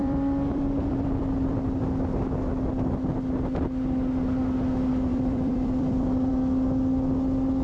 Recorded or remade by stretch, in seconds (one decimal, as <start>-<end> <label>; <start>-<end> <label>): 0.0-1.8 remade; 1.8-5.1 recorded; 5.1-6.3 remade; 6.3-7.6 recorded